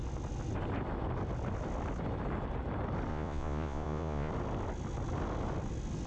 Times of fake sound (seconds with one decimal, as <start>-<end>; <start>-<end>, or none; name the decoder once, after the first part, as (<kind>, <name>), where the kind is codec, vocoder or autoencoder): 3.1-4.3 (vocoder, Vocos)